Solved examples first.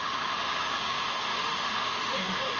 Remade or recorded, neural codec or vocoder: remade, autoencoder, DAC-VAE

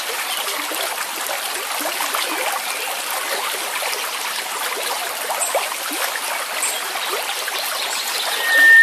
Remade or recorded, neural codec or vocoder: recorded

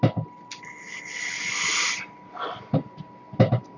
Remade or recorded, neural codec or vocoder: recorded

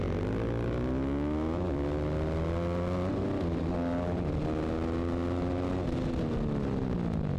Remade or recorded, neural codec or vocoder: recorded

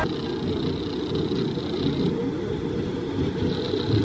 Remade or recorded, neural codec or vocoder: recorded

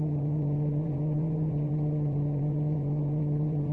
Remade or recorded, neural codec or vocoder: remade, vocoder, Vocos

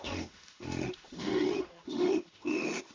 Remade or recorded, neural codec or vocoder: remade, autoencoder, DAC-VAE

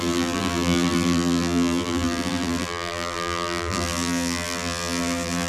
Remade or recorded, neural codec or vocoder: remade, vocoder, BigVGAN v2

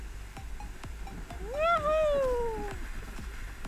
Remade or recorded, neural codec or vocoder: recorded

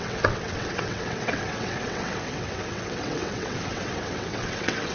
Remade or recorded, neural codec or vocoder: remade, vocoder, WaveNeXt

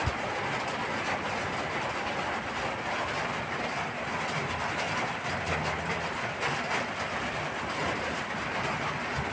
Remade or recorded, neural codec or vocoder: recorded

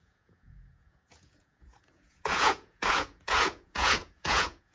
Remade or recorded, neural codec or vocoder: remade, vocoder, Vocos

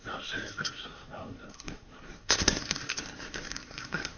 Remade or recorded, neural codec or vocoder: remade, codec, SNAC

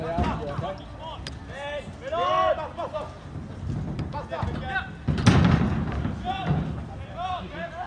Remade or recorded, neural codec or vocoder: recorded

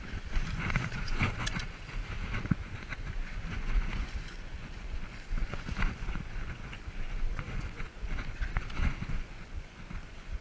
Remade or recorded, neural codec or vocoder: remade, vocoder, Vocos